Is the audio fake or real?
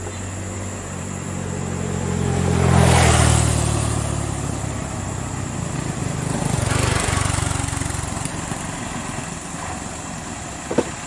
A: real